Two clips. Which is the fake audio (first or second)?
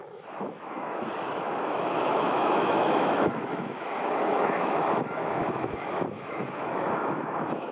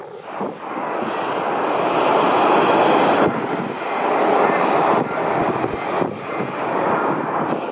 first